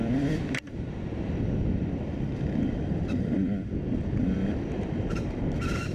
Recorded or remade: remade